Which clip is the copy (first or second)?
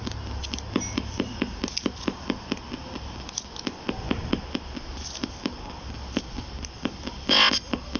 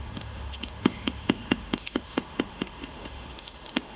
second